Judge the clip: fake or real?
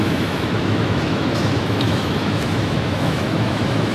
fake